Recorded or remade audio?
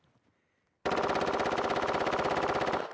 recorded